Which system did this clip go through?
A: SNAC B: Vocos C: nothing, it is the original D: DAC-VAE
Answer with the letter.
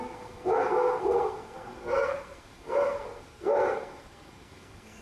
A